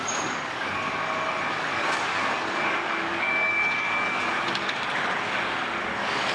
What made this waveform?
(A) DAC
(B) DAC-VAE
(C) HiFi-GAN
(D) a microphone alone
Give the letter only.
A